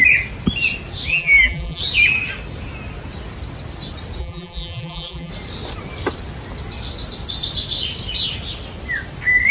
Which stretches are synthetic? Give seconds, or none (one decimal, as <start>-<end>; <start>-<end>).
1.1-1.8; 4.2-5.3